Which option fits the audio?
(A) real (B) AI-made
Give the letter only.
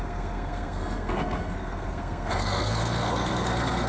B